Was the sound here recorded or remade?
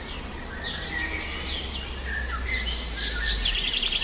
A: recorded